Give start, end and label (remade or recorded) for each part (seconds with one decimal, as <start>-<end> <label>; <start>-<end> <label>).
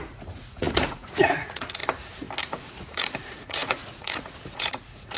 0.0-1.8 remade; 1.8-2.4 recorded; 2.4-5.2 remade